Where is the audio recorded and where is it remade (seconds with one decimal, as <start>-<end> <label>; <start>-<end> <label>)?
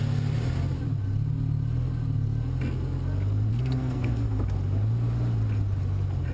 0.0-3.5 recorded; 3.5-4.4 remade; 4.4-6.3 recorded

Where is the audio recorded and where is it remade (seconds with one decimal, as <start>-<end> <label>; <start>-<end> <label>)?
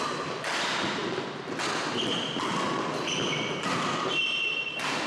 0.0-5.1 recorded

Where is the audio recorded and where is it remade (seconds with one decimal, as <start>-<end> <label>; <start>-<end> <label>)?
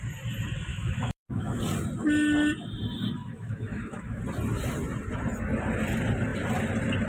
0.0-0.7 recorded; 0.7-1.6 remade; 1.6-3.2 recorded; 3.2-4.2 remade; 4.2-7.1 recorded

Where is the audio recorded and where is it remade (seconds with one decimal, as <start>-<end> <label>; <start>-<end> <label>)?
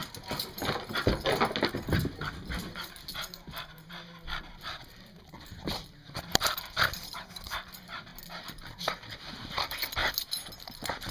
0.0-4.4 recorded; 4.4-8.1 remade; 8.1-8.7 recorded; 8.7-10.0 remade; 10.0-10.6 recorded; 10.6-11.1 remade